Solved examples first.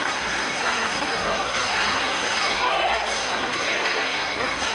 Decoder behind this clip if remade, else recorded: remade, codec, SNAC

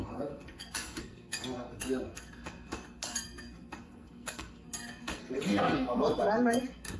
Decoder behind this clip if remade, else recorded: remade, codec, SNAC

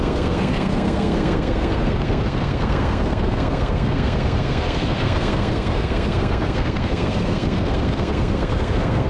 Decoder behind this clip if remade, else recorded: remade, codec, SNAC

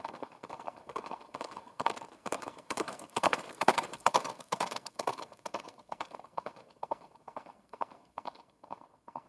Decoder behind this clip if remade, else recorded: remade, codec, SNAC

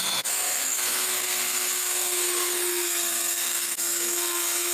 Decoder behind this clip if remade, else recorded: remade, codec, SNAC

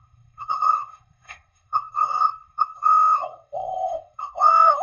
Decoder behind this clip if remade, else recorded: remade, codec, SNAC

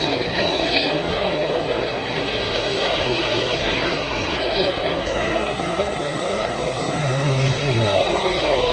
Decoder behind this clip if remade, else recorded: remade, codec, SNAC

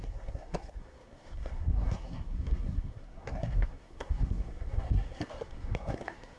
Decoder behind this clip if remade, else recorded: remade, codec, SNAC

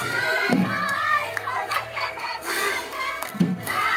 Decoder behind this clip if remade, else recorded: remade, codec, SNAC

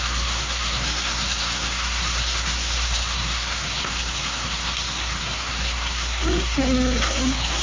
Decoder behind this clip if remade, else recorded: remade, codec, SNAC